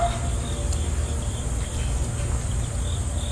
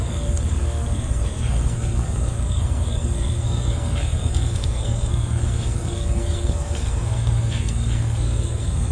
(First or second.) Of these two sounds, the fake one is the second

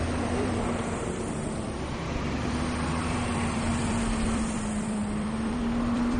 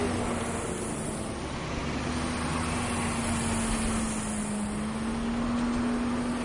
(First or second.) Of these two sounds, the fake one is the first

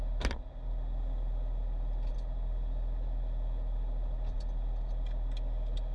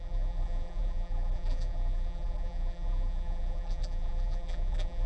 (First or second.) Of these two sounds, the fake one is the second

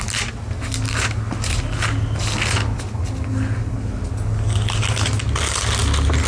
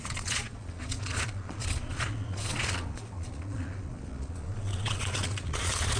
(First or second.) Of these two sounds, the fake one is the second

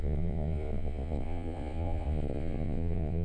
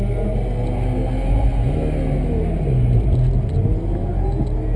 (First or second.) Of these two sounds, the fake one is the first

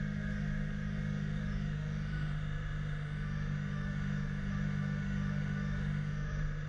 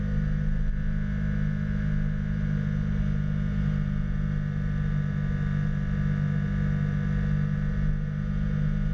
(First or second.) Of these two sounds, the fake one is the first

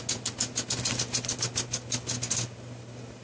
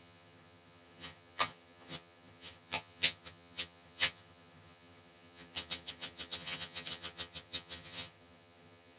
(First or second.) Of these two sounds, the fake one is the second